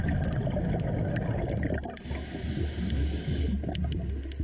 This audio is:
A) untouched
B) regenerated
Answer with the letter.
A